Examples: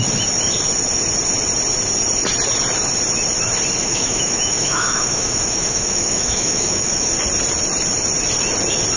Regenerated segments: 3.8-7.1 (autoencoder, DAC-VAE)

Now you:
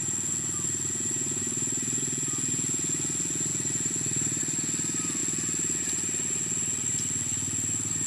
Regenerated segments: 1.1-2.0 (vocoder, BigVGAN v2); 3.5-4.4

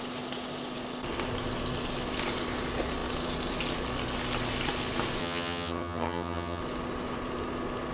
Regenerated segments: 5.2-6.6 (vocoder, HiFi-GAN)

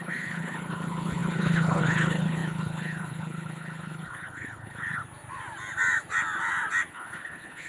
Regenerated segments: 0.0-5.0 (codec, HILCodec); 6.9-7.7

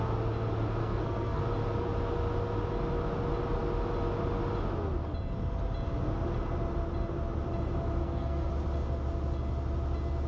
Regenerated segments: 0.8-1.4 (codec, SNAC); 8.0-8.5